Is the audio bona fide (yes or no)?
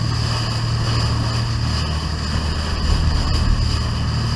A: yes